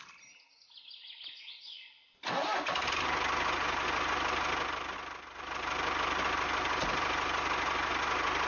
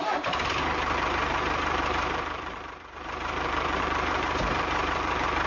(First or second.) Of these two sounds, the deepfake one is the second